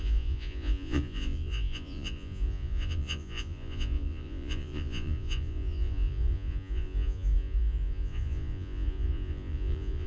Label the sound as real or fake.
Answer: fake